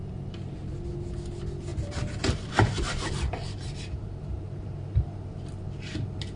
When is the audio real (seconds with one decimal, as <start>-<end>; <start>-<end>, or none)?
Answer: 0.0-1.7; 5.5-6.4